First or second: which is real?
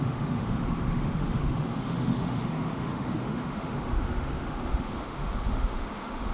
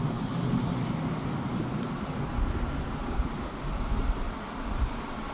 second